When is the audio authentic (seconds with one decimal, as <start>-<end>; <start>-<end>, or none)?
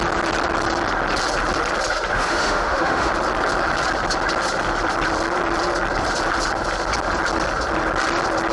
0.0-2.1; 3.1-8.5